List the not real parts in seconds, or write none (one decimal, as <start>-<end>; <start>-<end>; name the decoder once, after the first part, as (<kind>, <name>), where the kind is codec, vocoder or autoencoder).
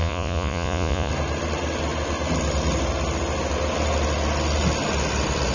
0.0-1.1 (vocoder, Vocos)